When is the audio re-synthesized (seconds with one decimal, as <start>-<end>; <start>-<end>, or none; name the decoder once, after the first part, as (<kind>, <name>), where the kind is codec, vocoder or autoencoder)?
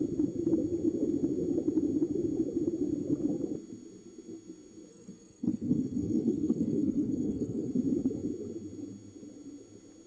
4.9-7.7 (codec, SNAC)